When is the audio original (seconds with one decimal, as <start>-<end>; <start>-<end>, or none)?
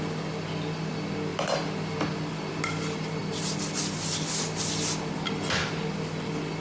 0.0-6.6